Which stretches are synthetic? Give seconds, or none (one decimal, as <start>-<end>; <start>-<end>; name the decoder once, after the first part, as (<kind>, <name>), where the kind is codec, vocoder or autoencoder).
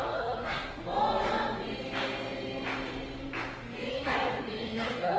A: 0.0-0.8 (codec, SNAC); 3.9-5.2